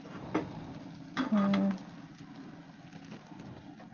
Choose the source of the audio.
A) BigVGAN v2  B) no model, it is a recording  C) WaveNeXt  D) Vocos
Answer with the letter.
B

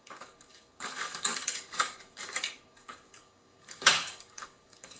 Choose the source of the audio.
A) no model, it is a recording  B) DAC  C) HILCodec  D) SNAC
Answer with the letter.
B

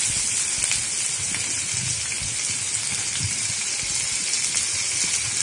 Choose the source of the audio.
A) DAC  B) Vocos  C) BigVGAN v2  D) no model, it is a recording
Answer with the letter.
D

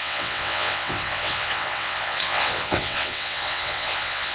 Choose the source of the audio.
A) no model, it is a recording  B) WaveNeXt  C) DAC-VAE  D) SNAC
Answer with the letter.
B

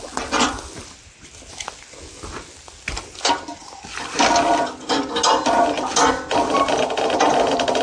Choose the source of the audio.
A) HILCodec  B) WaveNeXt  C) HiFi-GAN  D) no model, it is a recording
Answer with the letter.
D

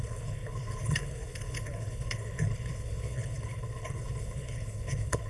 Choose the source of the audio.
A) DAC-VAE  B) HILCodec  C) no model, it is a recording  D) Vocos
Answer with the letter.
B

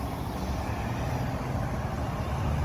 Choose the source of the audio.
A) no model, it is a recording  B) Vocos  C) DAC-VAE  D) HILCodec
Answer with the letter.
A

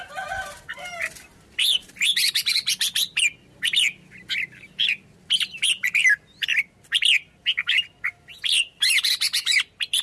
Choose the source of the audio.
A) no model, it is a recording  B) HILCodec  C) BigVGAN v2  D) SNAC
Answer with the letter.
A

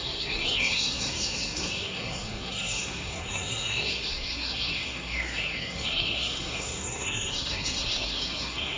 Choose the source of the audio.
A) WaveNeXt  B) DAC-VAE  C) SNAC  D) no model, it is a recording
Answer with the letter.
C